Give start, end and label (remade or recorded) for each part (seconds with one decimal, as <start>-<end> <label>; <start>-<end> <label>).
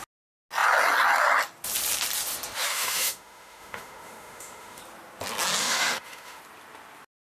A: 0.0-2.7 recorded; 2.7-4.8 remade; 4.8-5.6 recorded; 5.6-6.4 remade; 6.4-7.4 recorded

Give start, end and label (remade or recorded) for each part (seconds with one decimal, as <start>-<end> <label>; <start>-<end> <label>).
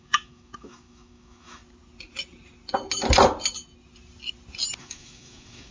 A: 0.0-1.6 remade; 1.6-4.8 recorded; 4.8-5.7 remade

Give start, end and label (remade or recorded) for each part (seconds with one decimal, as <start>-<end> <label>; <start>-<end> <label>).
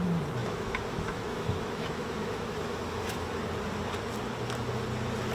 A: 0.0-0.4 recorded; 0.4-3.6 remade; 3.6-5.3 recorded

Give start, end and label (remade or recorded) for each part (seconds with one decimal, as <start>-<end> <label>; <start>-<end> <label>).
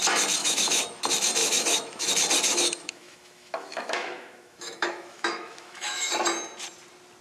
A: 0.0-0.4 recorded; 0.4-1.0 remade; 1.0-1.4 recorded; 1.4-2.1 remade; 2.1-2.5 recorded; 2.5-6.1 remade; 6.1-7.2 recorded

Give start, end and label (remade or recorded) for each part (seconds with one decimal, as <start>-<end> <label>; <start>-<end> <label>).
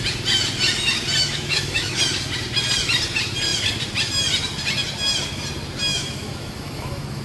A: 0.0-1.2 recorded; 1.2-2.0 remade; 2.0-5.9 recorded; 5.9-7.2 remade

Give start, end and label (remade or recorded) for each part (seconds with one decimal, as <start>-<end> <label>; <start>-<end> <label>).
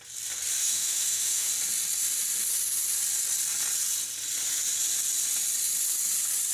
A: 0.0-0.6 recorded; 0.6-1.5 remade; 1.5-6.5 recorded